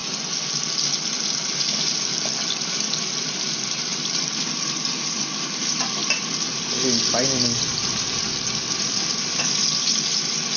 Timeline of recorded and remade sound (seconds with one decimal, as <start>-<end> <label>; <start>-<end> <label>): 0.0-2.9 recorded; 2.9-3.9 remade; 3.9-5.6 recorded; 5.6-6.0 remade; 6.0-8.7 recorded; 8.7-10.6 remade